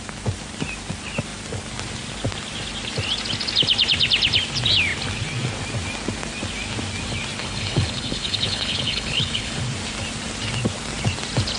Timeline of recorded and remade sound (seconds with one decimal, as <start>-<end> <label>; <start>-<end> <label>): 0.0-7.4 recorded; 7.4-9.6 remade; 9.6-11.6 recorded

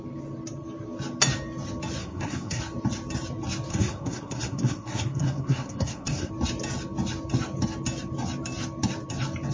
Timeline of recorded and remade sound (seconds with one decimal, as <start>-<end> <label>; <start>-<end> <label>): 0.0-2.0 recorded; 2.0-2.6 remade; 2.6-3.7 recorded; 3.7-6.3 remade; 6.3-9.5 recorded

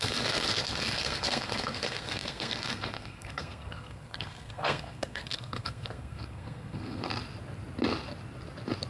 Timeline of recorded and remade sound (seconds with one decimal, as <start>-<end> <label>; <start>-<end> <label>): 0.0-7.1 remade; 7.1-8.9 recorded

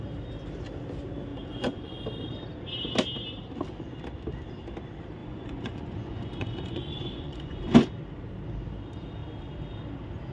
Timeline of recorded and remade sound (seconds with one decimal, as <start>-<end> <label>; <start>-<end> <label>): 0.0-1.3 recorded; 1.3-2.0 remade; 2.0-5.2 recorded; 5.2-7.9 remade; 7.9-10.3 recorded

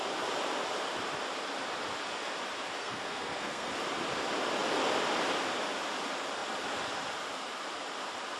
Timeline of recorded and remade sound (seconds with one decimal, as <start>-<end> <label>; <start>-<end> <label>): 0.0-2.8 recorded; 2.8-3.7 remade; 3.7-8.4 recorded

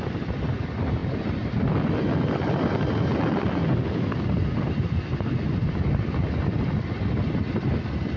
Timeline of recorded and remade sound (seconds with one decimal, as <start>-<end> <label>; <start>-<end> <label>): 0.0-8.2 recorded

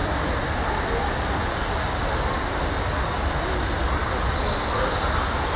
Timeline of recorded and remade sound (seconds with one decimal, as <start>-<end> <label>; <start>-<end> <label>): 0.0-5.6 recorded